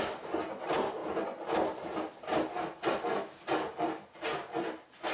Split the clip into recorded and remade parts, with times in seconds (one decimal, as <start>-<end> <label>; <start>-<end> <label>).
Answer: 0.0-5.1 recorded